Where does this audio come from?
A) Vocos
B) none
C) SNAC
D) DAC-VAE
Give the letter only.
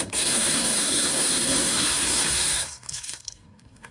C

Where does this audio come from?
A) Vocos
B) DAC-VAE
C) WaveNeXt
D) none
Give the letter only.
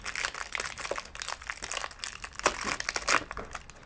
D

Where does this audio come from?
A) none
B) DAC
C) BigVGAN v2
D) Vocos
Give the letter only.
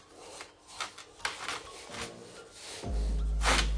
A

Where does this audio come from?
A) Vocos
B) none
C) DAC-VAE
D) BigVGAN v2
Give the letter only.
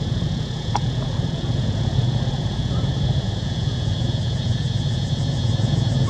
A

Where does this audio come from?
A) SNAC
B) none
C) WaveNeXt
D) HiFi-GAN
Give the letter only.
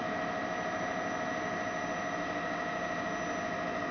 B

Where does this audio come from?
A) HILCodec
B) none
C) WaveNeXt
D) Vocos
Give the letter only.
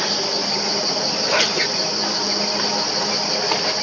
B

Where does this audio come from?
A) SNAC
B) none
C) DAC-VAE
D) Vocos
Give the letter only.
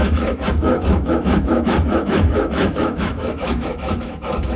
C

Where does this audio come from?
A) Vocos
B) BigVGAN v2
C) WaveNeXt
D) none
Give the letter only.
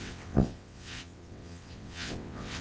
C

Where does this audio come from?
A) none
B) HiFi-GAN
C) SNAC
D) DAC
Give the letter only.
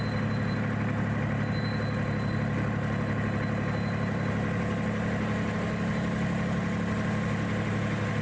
A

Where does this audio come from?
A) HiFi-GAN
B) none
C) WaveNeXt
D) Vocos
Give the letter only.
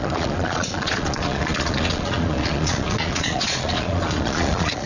D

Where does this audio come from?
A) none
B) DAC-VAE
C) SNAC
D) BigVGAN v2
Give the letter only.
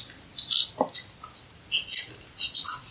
A